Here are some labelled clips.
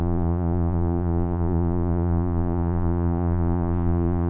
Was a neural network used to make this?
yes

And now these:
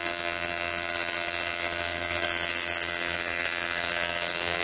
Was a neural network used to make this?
yes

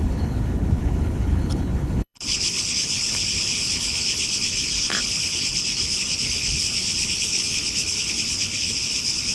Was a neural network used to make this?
yes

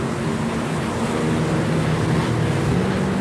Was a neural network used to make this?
no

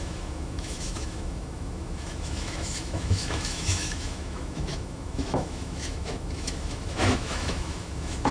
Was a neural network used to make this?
yes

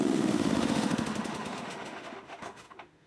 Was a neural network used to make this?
yes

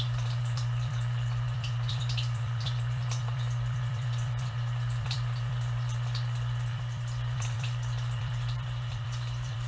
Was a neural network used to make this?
yes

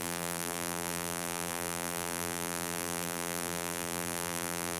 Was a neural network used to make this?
yes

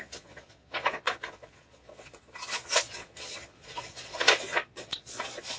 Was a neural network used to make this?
yes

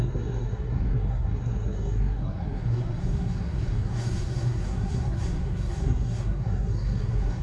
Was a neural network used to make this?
yes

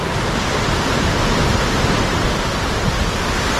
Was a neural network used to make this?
no